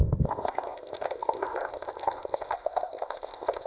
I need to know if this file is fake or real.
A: fake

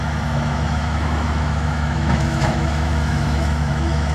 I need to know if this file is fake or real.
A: fake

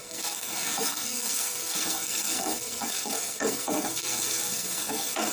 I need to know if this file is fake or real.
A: fake